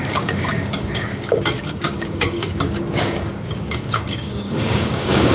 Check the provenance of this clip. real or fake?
fake